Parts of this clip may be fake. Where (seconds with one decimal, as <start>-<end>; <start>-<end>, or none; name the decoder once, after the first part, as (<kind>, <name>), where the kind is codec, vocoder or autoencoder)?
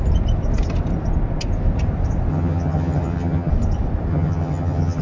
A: 2.3-3.5 (vocoder, HiFi-GAN); 4.1-5.0